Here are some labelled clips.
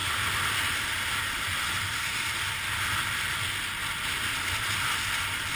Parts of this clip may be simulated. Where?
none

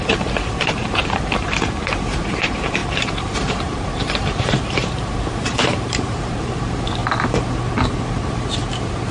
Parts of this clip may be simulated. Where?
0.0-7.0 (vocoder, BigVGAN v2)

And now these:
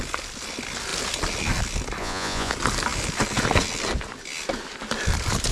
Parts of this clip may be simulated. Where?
2.0-2.5 (vocoder, Vocos)

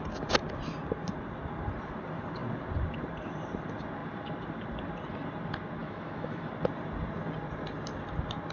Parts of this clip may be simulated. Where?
5.8-6.5 (autoencoder, DAC-VAE)

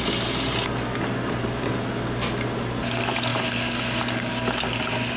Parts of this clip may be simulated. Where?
none